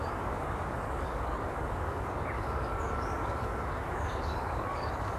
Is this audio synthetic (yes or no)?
yes